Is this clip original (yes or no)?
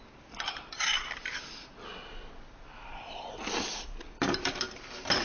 yes